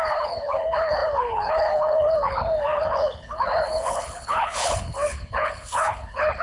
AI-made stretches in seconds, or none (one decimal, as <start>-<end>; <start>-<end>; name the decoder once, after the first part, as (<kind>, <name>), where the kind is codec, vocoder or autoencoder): 0.0-6.4 (codec, HILCodec)

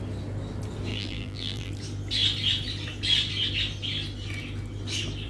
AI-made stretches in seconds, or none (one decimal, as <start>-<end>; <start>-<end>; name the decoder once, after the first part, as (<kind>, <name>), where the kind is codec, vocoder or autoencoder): 0.9-1.7 (vocoder, BigVGAN v2)

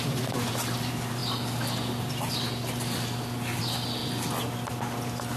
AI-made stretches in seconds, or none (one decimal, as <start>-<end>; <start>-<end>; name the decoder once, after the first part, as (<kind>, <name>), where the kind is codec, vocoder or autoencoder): none